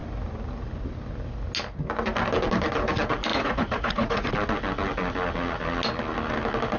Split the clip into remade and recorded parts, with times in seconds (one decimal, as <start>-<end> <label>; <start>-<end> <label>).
0.0-3.3 recorded; 3.3-4.3 remade; 4.3-6.8 recorded